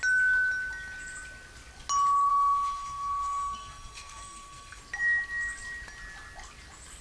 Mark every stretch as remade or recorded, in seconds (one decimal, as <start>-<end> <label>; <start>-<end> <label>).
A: 0.0-2.3 recorded; 2.3-4.8 remade; 4.8-7.0 recorded